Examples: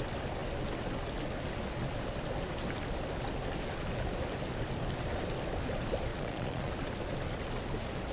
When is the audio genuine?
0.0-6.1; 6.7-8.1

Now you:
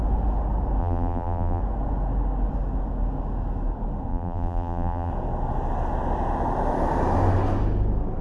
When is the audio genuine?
0.0-0.8; 1.6-4.1; 5.1-8.2

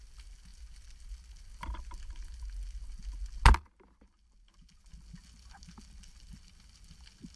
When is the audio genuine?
0.0-7.4